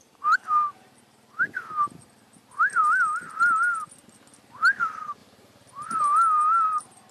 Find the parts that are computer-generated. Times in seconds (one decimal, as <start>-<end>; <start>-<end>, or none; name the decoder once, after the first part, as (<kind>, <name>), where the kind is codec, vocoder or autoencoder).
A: 5.2-6.0 (vocoder, BigVGAN v2)